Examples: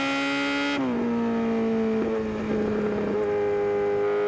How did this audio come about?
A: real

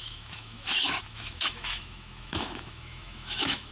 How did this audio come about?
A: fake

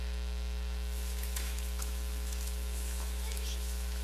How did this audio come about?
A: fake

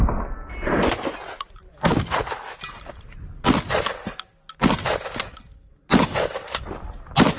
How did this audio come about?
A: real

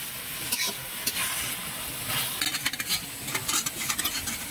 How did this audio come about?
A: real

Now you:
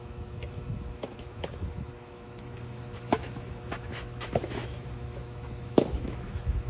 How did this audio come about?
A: fake